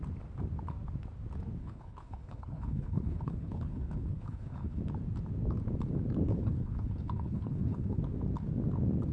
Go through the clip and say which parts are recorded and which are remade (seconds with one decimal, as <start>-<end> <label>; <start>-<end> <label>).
0.0-1.6 recorded; 1.6-4.8 remade; 4.8-6.3 recorded; 6.3-8.0 remade; 8.0-9.1 recorded